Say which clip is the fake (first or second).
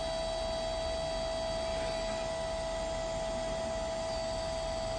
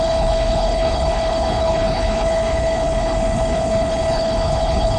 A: second